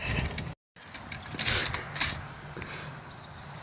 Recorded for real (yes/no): yes